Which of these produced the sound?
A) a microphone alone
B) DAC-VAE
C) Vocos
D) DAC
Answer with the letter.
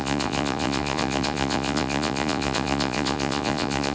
C